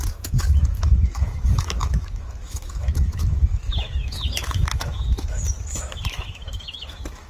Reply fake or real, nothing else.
fake